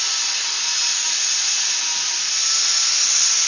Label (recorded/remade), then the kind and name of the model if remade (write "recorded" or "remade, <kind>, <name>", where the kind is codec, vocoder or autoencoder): recorded